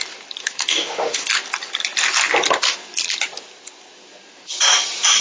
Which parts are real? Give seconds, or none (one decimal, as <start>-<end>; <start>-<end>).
0.0-0.4; 1.3-5.2